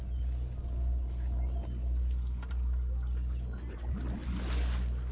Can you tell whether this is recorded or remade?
recorded